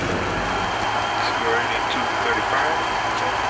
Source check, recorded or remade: recorded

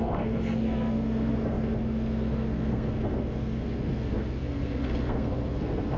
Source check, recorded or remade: remade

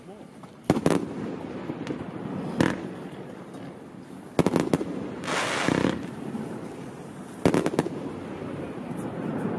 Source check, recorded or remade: recorded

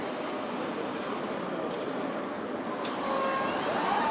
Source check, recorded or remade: recorded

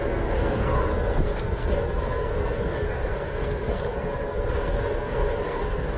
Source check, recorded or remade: remade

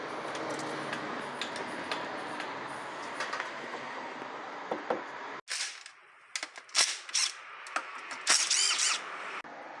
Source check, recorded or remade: recorded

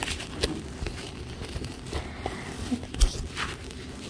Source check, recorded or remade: recorded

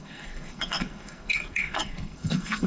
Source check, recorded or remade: remade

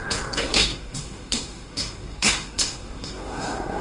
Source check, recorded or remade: remade